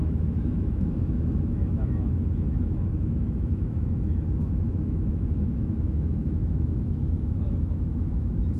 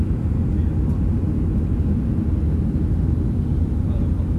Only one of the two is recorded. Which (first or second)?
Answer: second